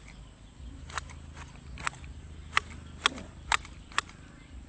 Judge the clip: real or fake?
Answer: real